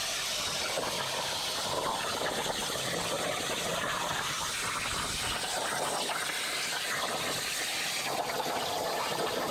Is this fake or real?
real